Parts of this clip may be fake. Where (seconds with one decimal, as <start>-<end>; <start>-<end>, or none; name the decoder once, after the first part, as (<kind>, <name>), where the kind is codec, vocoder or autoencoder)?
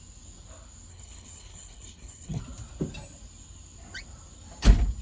0.9-2.4 (codec, HILCodec)